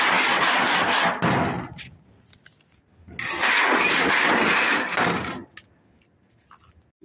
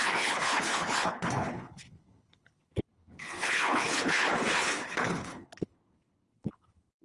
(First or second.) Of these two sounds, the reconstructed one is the second